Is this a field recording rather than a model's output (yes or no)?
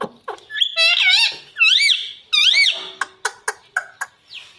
yes